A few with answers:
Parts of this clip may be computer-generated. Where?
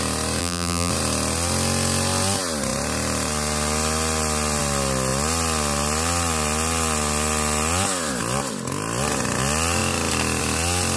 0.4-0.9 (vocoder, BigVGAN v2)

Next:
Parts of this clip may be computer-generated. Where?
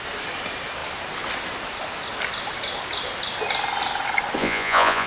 4.4-5.1 (vocoder, Vocos)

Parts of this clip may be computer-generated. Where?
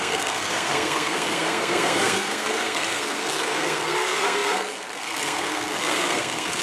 0.0-6.6 (codec, SNAC)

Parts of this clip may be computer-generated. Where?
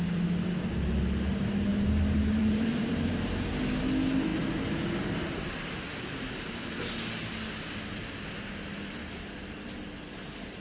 1.7-3.5 (vocoder, BigVGAN v2)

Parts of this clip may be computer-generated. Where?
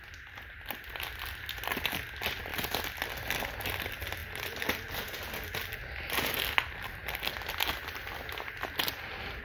none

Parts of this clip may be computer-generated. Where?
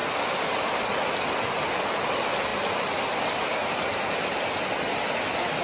none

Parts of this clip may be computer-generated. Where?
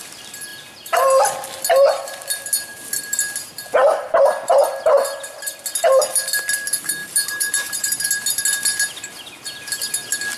7.0-8.0 (vocoder, BigVGAN v2)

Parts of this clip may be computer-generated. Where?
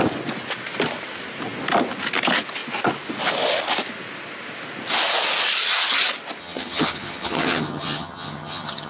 6.4-8.9 (vocoder, HiFi-GAN)